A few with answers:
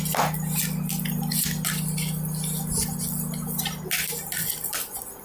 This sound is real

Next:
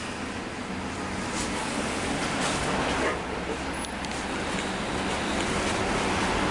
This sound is real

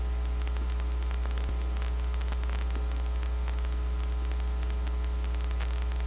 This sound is real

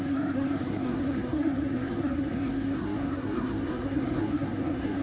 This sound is fake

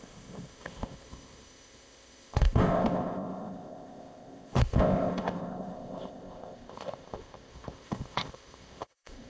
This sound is fake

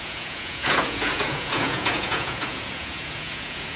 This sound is fake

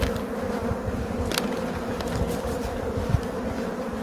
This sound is real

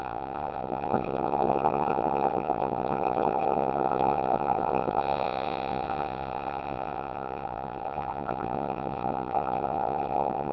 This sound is fake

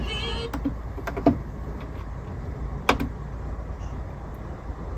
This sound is real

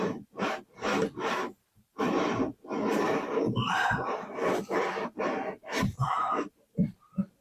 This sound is fake